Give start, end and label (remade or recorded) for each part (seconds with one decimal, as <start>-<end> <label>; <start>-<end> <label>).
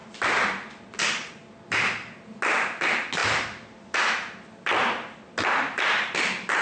0.0-6.6 recorded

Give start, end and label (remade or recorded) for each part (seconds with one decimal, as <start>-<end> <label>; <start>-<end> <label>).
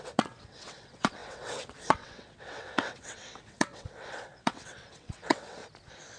0.0-5.6 remade; 5.6-6.2 recorded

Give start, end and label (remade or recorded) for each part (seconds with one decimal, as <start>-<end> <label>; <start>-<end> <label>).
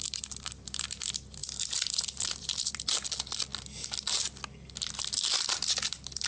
0.0-6.3 recorded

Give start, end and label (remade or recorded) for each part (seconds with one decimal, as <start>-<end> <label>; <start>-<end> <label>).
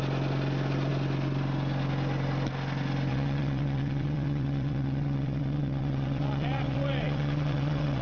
0.0-3.1 recorded; 3.1-8.0 remade